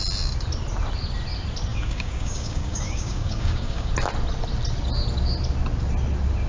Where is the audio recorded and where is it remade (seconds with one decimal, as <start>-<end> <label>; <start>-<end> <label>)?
0.0-1.7 recorded; 1.7-3.9 remade; 3.9-6.5 recorded